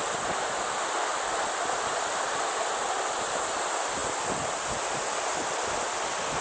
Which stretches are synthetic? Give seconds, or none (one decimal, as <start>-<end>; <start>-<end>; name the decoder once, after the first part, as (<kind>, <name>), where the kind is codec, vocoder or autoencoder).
none